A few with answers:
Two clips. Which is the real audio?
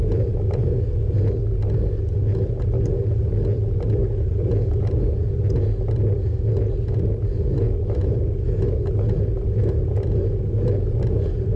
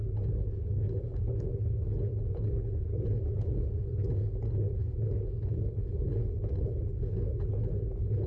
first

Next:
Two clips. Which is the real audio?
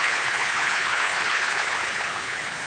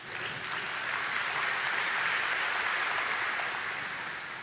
second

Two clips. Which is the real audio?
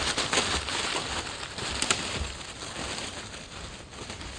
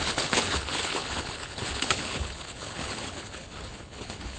first